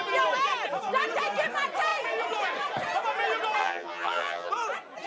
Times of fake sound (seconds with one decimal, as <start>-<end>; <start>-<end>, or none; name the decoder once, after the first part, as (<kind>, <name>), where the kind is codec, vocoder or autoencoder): 3.6-4.5 (vocoder, HiFi-GAN)